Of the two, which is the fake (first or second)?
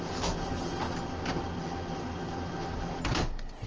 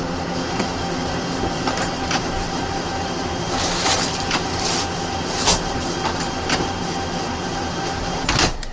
second